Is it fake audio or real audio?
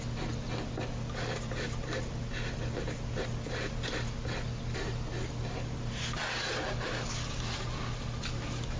real